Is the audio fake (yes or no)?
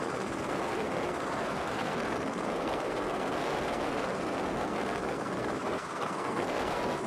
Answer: yes